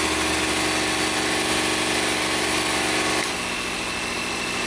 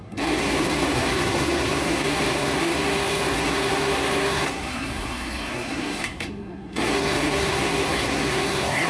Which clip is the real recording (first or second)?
first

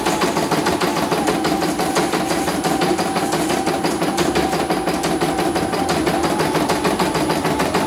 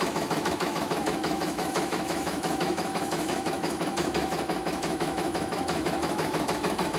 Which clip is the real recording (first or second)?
first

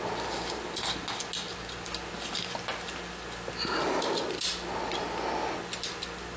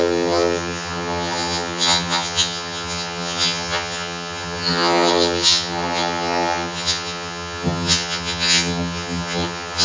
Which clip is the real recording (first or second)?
first